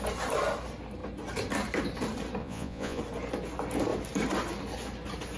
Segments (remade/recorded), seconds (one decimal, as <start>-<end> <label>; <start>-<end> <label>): 0.0-2.4 recorded; 2.4-3.0 remade; 3.0-5.4 recorded